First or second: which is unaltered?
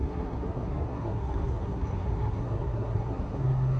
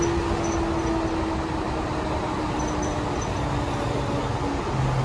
second